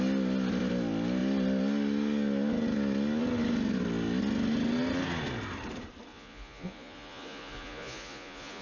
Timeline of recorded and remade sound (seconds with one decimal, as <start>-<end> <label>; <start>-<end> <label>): 0.0-6.1 recorded; 6.1-8.6 remade